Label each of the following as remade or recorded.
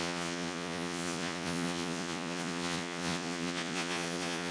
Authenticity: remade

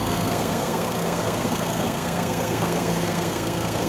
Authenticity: remade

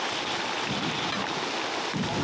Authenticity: recorded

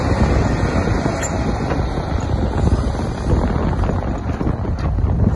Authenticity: recorded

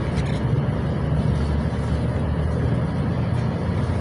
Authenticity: recorded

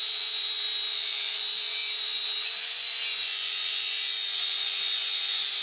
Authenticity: remade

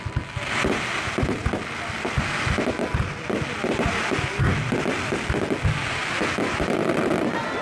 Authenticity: recorded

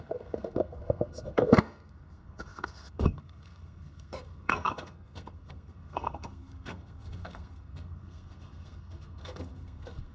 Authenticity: remade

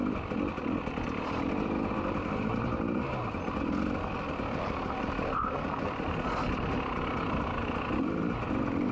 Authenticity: recorded